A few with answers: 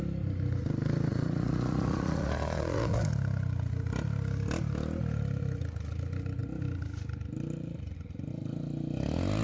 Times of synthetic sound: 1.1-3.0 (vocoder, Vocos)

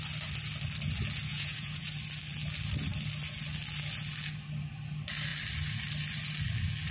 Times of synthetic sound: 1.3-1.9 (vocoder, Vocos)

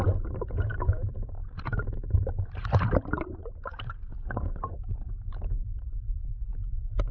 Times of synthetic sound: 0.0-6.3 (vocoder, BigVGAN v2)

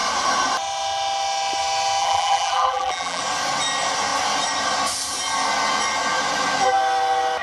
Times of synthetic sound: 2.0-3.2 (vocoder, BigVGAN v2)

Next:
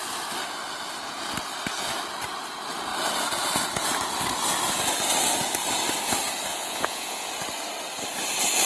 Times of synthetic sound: 6.5-7.3 (vocoder, Vocos)

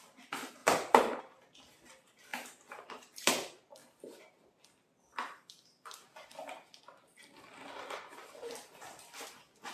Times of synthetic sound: 0.6-1.2 (vocoder, BigVGAN v2); 2.3-3.3